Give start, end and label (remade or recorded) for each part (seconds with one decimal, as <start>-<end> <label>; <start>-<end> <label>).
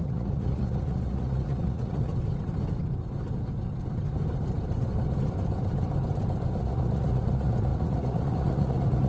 0.0-2.1 remade; 2.1-6.6 recorded; 6.6-9.1 remade